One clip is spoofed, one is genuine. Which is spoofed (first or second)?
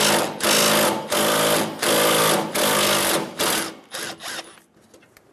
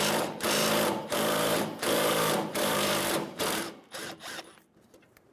second